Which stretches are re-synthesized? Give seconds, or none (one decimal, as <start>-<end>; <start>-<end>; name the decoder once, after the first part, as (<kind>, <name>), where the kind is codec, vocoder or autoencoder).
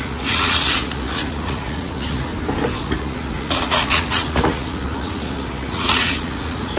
0.0-2.3 (vocoder, Vocos); 2.8-6.8